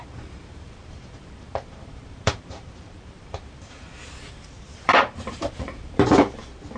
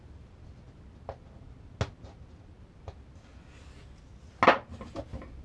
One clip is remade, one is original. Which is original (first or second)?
second